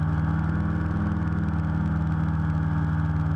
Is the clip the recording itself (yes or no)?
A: yes